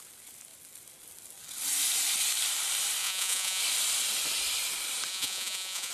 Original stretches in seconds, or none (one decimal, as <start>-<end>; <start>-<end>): 0.0-3.0; 3.6-5.1